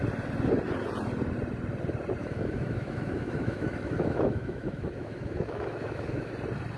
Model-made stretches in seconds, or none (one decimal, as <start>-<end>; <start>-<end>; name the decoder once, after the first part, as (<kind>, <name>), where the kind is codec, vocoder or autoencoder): 2.2-6.3 (autoencoder, DAC-VAE)